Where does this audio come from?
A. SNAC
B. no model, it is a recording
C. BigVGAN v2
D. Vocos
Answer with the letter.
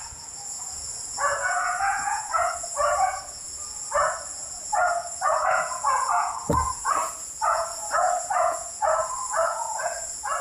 D